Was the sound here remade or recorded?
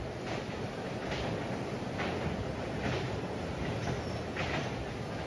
recorded